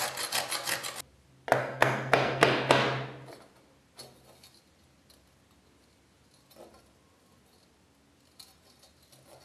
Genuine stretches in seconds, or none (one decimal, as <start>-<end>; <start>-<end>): 0.0-1.6; 2.8-9.4